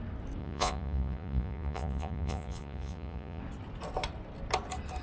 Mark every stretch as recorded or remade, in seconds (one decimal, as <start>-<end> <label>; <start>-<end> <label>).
0.0-0.4 recorded; 0.4-3.4 remade; 3.4-5.0 recorded